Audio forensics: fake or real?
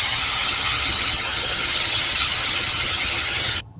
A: fake